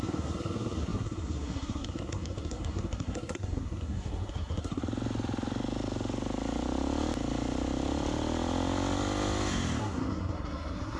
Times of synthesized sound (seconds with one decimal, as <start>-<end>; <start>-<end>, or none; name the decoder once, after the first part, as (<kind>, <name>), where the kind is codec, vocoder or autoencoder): 0.0-4.8 (codec, SNAC); 9.8-11.0